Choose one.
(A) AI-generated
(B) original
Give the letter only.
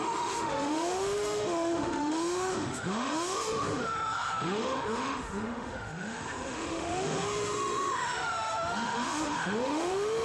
A